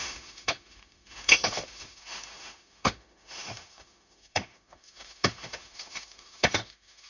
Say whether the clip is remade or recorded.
remade